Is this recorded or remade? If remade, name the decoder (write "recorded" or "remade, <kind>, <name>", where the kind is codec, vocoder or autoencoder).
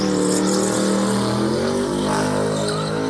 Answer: recorded